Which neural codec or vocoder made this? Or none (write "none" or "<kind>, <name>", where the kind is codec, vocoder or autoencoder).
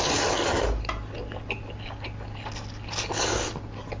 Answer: none